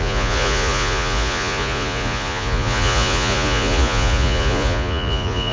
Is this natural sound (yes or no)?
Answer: no